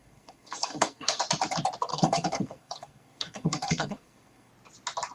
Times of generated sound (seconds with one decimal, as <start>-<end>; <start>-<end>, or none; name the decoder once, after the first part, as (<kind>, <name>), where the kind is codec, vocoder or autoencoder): 0.0-1.2 (codec, SNAC); 1.9-4.5